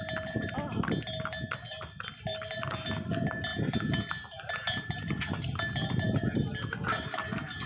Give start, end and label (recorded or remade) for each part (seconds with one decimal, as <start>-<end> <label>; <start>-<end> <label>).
0.0-7.7 recorded